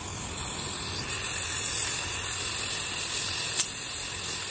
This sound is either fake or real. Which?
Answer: real